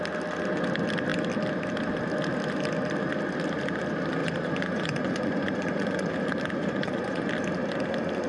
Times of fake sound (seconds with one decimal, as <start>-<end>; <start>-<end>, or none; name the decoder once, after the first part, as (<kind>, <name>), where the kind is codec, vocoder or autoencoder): 4.2-6.1 (vocoder, Vocos); 6.6-7.3